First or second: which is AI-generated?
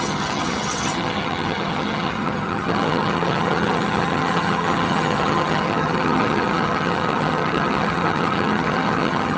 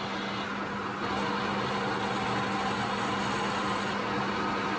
first